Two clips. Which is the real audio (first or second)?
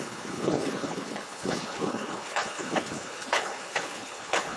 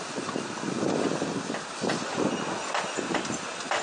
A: second